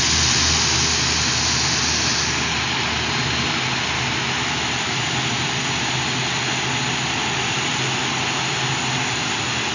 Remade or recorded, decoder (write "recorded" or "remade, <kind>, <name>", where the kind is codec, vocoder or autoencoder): recorded